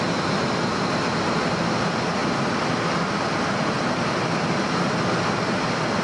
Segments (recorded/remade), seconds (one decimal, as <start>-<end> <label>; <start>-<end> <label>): 0.0-6.0 recorded